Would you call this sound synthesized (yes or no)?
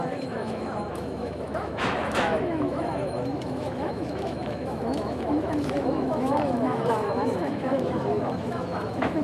yes